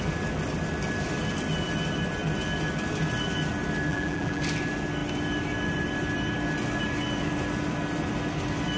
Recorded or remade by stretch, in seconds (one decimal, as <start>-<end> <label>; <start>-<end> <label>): 0.0-3.9 recorded; 3.9-4.4 remade; 4.4-8.8 recorded